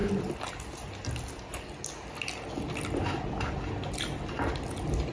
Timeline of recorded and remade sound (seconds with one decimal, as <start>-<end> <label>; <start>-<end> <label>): 0.0-5.1 recorded